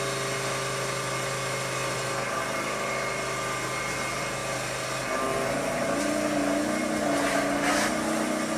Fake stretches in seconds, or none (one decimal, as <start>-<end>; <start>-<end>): none